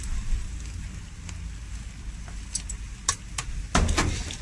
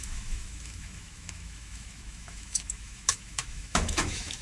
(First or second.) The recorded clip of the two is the first